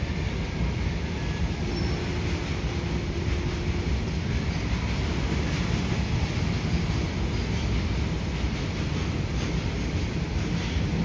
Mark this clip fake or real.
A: real